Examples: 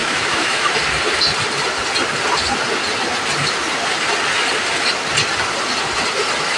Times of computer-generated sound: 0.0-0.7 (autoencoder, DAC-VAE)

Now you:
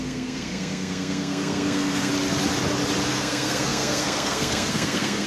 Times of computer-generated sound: 0.0-2.1 (codec, SNAC); 3.1-5.3

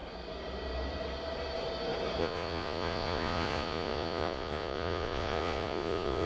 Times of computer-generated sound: 2.2-6.3 (vocoder, Vocos)

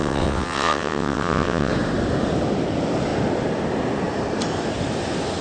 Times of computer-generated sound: 0.0-1.7 (vocoder, WaveNeXt)